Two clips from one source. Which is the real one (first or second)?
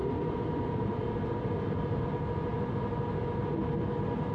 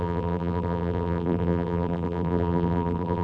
first